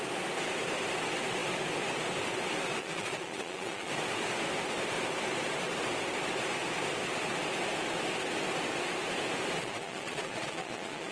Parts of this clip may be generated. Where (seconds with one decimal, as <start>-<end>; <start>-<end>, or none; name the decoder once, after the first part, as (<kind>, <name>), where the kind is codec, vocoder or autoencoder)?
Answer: 2.8-3.9 (vocoder, Vocos); 9.6-11.1